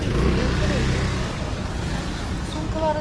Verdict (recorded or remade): recorded